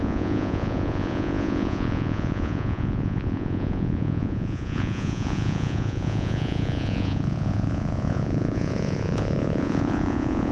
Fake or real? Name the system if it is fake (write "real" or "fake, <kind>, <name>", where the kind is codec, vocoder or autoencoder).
fake, vocoder, Vocos